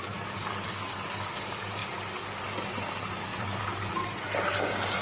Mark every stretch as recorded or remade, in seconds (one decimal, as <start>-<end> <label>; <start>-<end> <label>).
0.0-5.0 recorded